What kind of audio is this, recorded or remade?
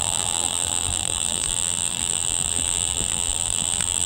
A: remade